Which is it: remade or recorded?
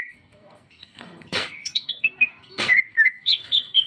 remade